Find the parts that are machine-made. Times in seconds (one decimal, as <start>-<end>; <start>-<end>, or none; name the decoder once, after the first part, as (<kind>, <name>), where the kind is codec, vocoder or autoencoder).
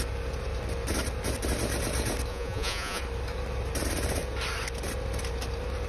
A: 2.3-3.0 (vocoder, Vocos)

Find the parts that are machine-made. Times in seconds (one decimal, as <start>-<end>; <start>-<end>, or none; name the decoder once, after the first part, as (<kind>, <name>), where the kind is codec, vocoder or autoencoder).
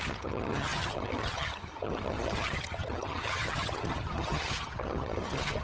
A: 0.0-5.6 (vocoder, HiFi-GAN)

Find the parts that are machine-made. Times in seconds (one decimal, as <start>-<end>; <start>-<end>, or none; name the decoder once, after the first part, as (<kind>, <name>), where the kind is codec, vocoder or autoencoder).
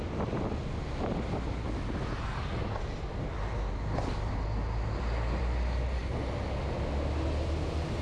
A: none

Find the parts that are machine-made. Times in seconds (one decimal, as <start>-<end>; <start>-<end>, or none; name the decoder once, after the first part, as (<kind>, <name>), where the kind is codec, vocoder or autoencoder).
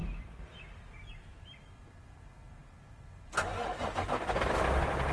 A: none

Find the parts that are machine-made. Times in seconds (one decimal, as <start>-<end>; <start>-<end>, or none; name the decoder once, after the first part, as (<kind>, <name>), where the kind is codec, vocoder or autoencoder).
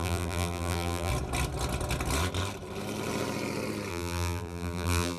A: 0.0-1.1 (vocoder, BigVGAN v2); 3.9-5.2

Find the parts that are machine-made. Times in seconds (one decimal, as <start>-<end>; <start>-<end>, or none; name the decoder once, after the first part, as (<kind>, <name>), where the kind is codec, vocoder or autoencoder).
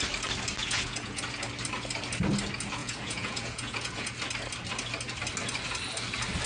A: 0.6-1.2 (vocoder, Vocos); 2.8-4.1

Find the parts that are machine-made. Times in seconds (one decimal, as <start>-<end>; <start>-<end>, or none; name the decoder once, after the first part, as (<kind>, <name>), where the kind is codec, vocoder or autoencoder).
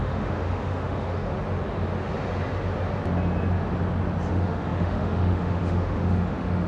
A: 0.0-1.3 (autoencoder, DAC-VAE); 4.3-6.7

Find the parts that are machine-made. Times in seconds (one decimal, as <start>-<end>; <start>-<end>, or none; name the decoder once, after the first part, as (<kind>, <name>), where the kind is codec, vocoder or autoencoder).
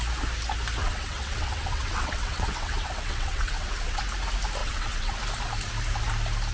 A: 0.8-4.0 (vocoder, WaveNeXt); 4.6-5.2